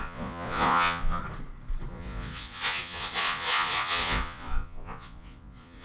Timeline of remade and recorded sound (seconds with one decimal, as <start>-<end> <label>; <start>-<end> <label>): 0.0-1.2 remade; 1.2-1.9 recorded; 1.9-5.8 remade